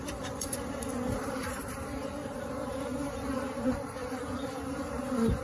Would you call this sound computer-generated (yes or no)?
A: yes